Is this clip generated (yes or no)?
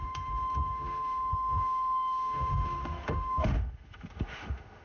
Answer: yes